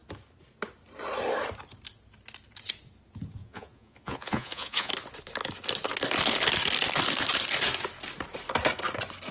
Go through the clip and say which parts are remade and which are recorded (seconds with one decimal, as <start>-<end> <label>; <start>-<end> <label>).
0.0-3.4 recorded; 3.4-4.9 remade; 4.9-9.3 recorded